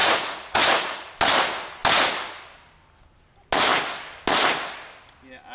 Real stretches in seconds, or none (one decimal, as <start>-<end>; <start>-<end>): 1.1-5.5

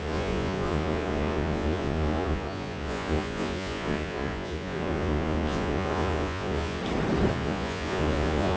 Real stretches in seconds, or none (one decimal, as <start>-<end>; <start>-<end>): 6.8-7.3

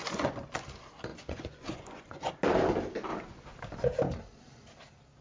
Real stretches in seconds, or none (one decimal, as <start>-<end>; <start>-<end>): 0.6-1.1; 2.3-5.2

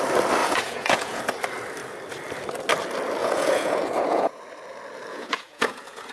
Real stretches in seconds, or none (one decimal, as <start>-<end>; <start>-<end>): 0.0-0.4; 1.2-3.2; 4.4-5.1

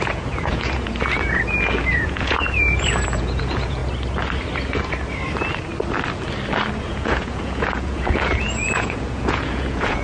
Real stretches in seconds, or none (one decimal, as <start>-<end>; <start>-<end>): 3.8-6.8

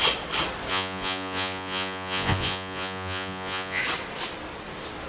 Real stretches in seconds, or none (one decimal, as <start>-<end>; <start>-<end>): 0.0-0.7; 3.8-5.1

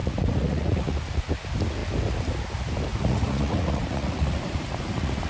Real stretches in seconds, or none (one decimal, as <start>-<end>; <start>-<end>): 1.2-2.9

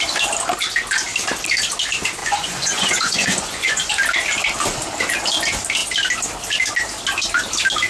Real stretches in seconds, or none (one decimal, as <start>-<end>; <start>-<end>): 0.0-2.2; 3.9-7.9